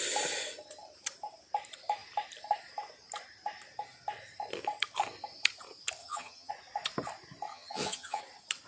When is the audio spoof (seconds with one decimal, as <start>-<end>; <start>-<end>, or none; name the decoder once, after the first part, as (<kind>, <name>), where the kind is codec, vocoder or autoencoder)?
6.0-6.5 (vocoder, HiFi-GAN); 7.5-8.2

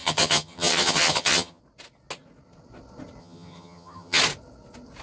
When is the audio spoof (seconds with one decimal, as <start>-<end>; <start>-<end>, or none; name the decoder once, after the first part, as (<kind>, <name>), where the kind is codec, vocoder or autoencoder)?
0.0-1.6 (vocoder, HiFi-GAN); 3.2-4.2

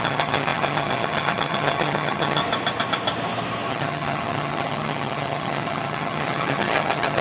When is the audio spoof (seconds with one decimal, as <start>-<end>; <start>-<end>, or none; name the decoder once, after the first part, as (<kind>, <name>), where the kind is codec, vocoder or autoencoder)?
0.0-2.4 (vocoder, HiFi-GAN); 3.7-7.2

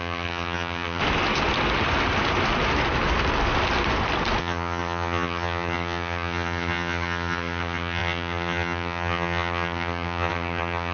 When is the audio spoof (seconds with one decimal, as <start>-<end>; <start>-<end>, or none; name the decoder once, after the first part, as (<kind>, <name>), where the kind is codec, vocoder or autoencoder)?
0.0-1.0 (vocoder, HiFi-GAN); 4.4-10.9

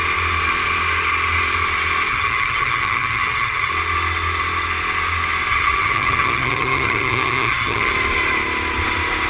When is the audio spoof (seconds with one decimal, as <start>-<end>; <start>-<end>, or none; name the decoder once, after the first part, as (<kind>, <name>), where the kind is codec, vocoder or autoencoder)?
2.1-3.7 (vocoder, HiFi-GAN); 5.5-7.9

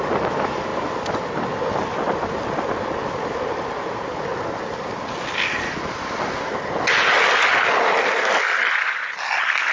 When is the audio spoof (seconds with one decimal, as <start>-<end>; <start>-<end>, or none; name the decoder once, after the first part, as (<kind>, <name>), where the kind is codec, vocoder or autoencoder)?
none

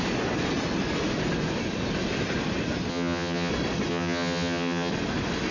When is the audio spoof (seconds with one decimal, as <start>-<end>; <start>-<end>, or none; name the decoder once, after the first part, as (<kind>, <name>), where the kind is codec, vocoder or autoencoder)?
2.9-3.5 (vocoder, HiFi-GAN); 3.9-4.9